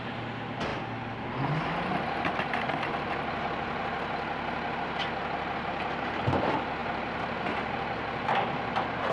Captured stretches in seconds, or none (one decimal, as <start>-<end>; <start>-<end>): 0.0-9.1